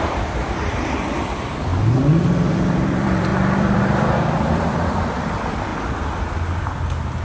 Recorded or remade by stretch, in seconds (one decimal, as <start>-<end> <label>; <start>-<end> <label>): 0.0-1.7 remade; 1.7-2.3 recorded; 2.3-5.7 remade; 5.7-7.2 recorded